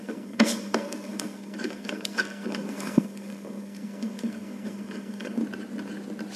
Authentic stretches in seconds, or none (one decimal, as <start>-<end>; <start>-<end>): 5.4-6.4